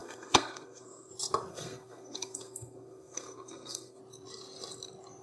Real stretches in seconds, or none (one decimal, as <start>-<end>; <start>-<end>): 1.1-1.5; 4.0-5.2